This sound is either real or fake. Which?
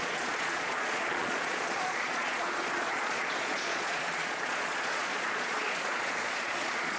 fake